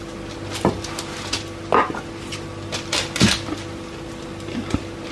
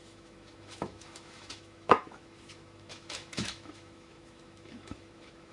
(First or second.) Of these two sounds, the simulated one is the second